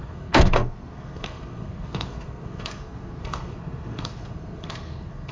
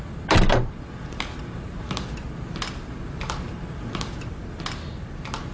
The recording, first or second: second